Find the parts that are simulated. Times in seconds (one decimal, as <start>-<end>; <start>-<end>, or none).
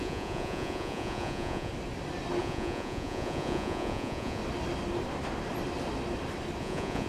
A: 0.0-1.7; 2.4-4.4; 6.6-7.1